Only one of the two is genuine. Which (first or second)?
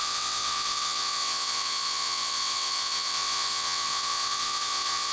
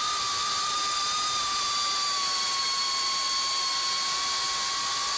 second